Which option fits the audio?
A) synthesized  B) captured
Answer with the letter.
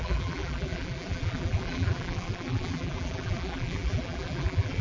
A